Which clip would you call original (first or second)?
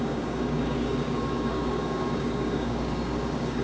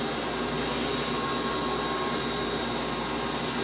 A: second